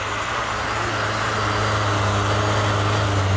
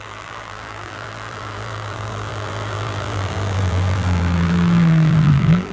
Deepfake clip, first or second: second